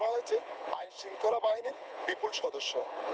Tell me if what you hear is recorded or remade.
remade